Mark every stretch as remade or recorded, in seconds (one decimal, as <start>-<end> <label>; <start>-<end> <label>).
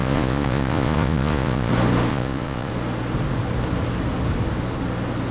0.0-1.7 remade; 1.7-2.1 recorded; 2.1-2.7 remade; 2.7-5.3 recorded